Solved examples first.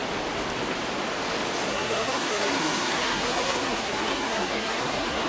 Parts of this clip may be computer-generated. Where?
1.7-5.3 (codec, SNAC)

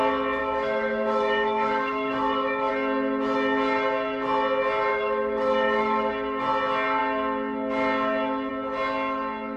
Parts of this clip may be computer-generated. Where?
0.4-2.7 (autoencoder, DAC-VAE); 4.9-6.1

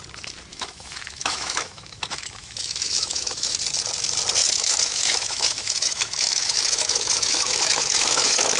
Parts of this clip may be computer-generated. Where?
0.5-3.6 (autoencoder, DAC-VAE); 4.4-8.6

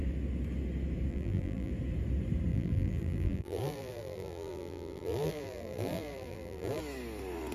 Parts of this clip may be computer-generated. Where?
1.1-1.7 (vocoder, BigVGAN v2); 2.5-6.8

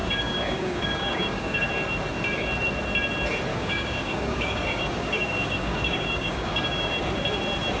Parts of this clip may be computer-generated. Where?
0.0-1.7 (codec, DAC); 3.5-6.9

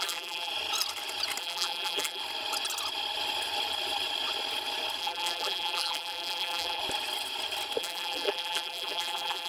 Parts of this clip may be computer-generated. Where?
0.0-0.5 (vocoder, BigVGAN v2); 1.4-2.2; 5.0-6.8; 7.8-9.5

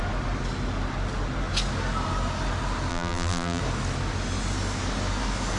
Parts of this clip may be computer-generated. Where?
2.9-3.6 (vocoder, BigVGAN v2)